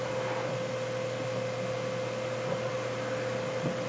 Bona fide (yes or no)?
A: yes